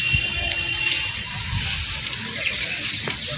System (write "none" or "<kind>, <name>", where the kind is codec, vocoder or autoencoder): none